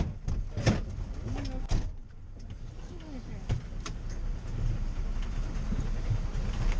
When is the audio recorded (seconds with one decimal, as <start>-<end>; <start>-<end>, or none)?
0.0-6.8